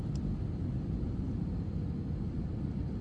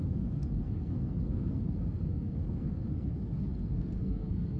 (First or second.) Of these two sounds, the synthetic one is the second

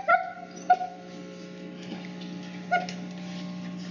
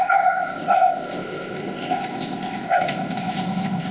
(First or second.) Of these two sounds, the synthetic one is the second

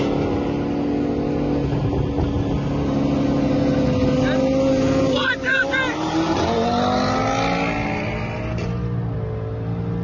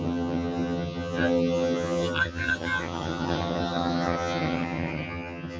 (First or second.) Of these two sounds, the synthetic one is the second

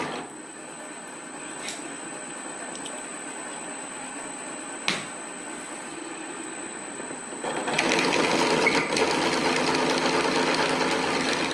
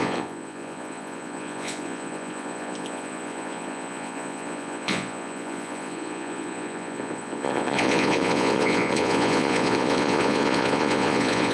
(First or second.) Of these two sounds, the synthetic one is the second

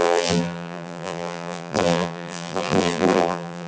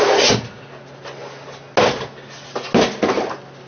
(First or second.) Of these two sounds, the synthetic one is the first